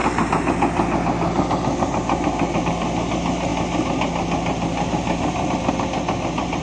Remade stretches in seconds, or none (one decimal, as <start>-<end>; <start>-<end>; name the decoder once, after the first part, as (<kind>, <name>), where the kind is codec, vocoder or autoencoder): none